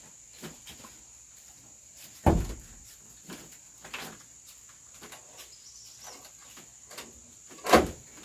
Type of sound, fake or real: real